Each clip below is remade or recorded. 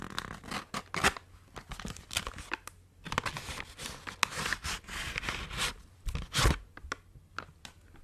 recorded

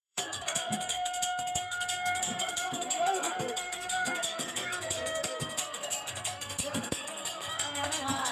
remade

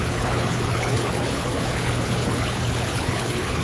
remade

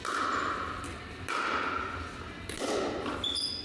recorded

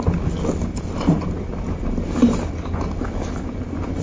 recorded